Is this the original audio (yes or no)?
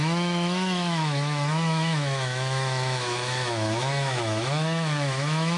no